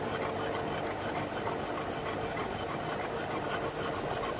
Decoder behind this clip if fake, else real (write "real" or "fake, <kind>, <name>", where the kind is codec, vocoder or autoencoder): real